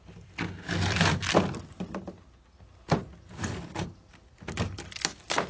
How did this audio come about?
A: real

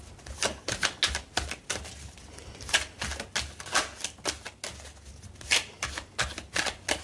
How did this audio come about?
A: real